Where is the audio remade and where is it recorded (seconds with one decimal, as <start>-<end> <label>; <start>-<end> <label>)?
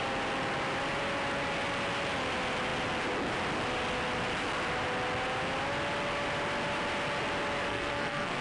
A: 0.0-7.7 recorded; 7.7-8.4 remade